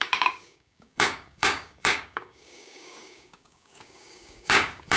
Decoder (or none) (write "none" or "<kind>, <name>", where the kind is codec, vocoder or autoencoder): codec, DAC